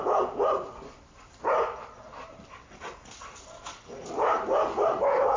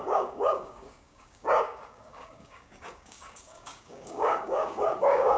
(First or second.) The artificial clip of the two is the second